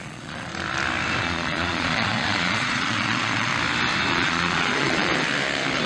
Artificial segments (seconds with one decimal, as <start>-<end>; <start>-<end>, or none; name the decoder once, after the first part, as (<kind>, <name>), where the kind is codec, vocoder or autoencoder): 0.0-0.5 (vocoder, Vocos); 1.2-3.5; 4.1-5.1

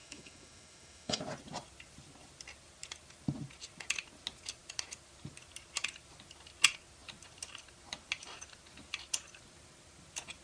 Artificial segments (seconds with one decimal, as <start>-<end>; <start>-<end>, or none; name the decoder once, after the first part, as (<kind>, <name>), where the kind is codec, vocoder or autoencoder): 0.0-1.2 (autoencoder, DAC-VAE)

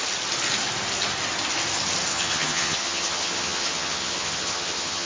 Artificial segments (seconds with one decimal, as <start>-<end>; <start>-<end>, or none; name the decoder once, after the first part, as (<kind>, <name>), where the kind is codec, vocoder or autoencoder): 2.1-5.1 (vocoder, HiFi-GAN)

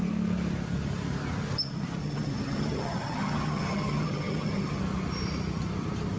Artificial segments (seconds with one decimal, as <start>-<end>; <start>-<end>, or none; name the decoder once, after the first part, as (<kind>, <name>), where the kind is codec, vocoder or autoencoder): 2.0-4.8 (vocoder, HiFi-GAN)

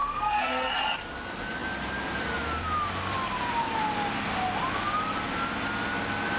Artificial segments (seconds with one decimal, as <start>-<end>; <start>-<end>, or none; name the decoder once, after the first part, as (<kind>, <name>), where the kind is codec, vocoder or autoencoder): 0.0-0.7 (codec, SNAC)

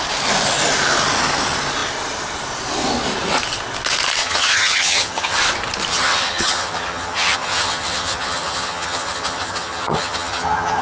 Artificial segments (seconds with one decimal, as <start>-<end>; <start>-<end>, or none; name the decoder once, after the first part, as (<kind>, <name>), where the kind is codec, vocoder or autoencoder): 4.2-5.4 (vocoder, HiFi-GAN); 5.9-10.8